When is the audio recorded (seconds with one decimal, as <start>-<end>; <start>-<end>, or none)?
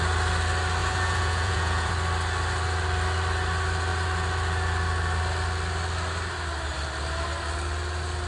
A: 0.0-0.8; 1.9-8.3